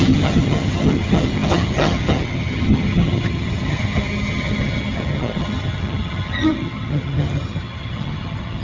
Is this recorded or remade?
remade